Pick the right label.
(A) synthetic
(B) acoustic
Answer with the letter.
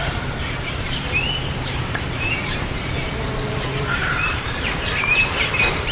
A